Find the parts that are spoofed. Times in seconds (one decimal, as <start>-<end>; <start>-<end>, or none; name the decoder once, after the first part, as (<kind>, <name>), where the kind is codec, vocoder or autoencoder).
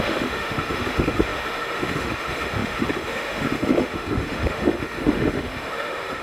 0.0-6.2 (autoencoder, DAC-VAE)